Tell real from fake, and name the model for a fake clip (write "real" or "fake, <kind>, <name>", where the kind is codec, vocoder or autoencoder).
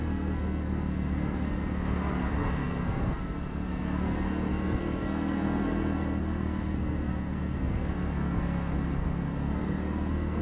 fake, codec, SNAC